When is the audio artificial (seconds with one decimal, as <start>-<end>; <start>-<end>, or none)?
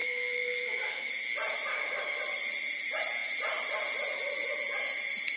0.0-1.1; 1.7-2.2